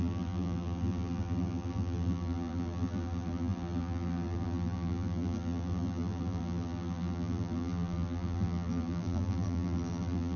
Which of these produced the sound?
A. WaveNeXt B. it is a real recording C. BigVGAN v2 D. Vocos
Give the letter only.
C